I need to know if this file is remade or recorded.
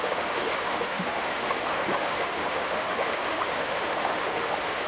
remade